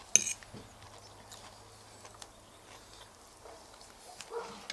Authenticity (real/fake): real